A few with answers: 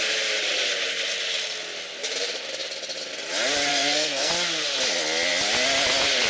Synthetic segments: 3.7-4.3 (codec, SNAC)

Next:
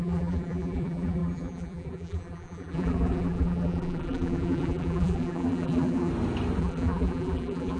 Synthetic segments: 0.0-6.1 (vocoder, BigVGAN v2); 6.6-7.8

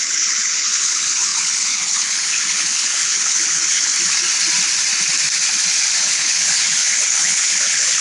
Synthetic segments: 0.0-3.9 (codec, HILCodec); 6.0-8.0

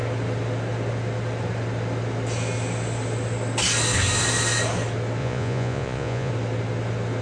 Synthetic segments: 5.2-6.3 (vocoder, Vocos)

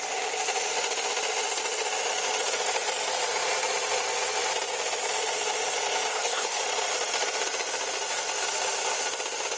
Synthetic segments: 6.1-6.6 (codec, HILCodec)

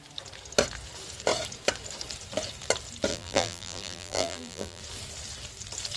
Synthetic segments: 3.1-4.8 (vocoder, BigVGAN v2)

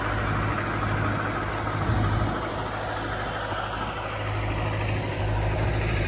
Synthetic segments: 5.1-6.1 (vocoder, BigVGAN v2)